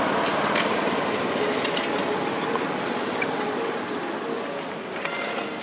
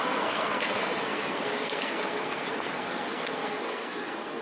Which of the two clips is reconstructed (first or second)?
second